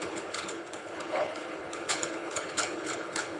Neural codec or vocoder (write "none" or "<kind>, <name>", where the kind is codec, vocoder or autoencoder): codec, HILCodec